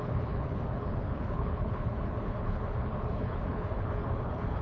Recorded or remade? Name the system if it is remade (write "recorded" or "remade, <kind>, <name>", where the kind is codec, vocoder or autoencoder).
remade, codec, HILCodec